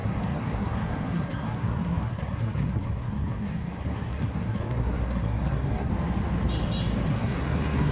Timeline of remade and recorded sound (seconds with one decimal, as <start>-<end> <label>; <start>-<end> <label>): 0.0-5.9 remade; 5.9-7.1 recorded; 7.1-7.9 remade